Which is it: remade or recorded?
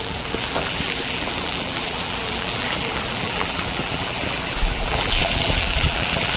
remade